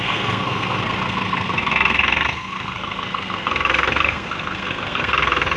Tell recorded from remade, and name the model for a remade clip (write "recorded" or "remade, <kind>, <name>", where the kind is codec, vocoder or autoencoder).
remade, codec, SNAC